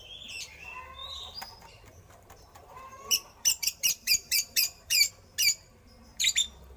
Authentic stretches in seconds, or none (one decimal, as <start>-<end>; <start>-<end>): 0.0-1.0; 5.1-6.8